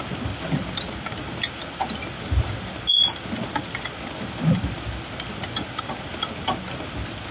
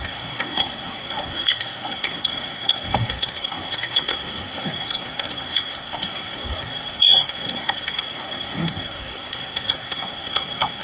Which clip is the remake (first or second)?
second